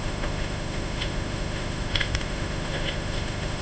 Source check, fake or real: fake